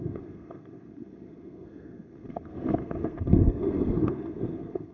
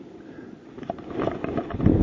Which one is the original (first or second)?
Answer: second